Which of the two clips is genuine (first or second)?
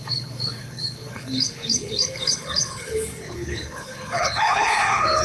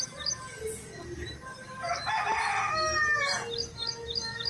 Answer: second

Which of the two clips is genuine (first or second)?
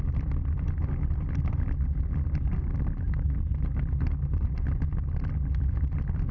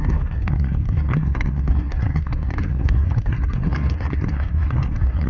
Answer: first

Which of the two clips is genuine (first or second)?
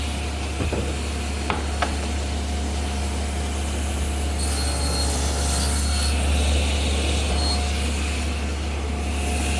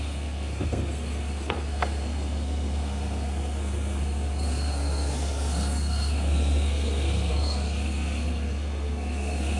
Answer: first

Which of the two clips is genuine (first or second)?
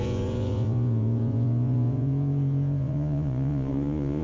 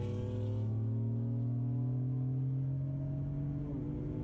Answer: second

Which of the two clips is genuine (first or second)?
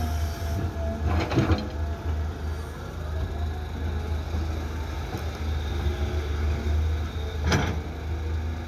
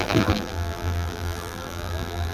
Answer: first